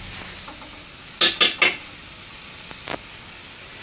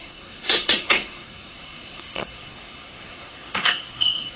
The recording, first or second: first